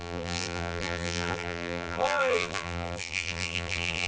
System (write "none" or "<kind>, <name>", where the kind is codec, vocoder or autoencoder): vocoder, BigVGAN v2